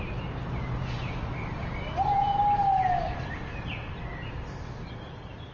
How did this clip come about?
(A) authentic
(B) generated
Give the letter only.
A